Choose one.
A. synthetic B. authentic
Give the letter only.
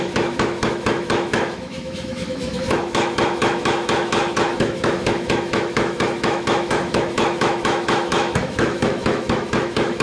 A